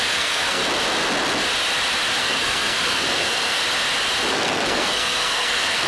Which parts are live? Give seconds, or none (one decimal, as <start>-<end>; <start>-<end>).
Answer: 0.6-2.2; 3.6-4.3